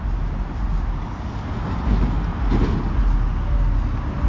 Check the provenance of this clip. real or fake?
real